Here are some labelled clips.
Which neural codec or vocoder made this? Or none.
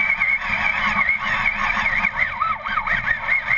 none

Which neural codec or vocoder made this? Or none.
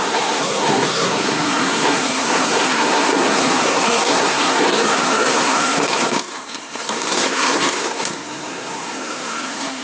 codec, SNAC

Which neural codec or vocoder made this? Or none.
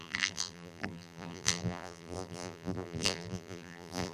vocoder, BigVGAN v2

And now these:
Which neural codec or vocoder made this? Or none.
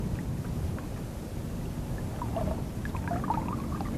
none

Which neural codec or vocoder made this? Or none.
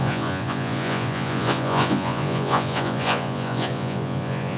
vocoder, Vocos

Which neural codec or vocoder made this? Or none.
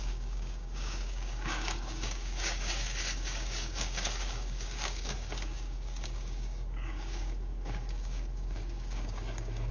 codec, DAC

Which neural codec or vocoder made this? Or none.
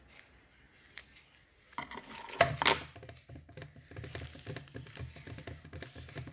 none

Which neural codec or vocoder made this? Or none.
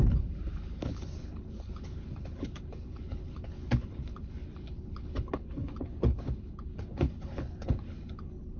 codec, HILCodec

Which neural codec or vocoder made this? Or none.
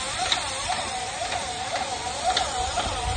vocoder, BigVGAN v2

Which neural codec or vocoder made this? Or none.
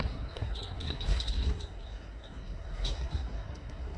codec, SNAC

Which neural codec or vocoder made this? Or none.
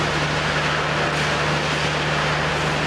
none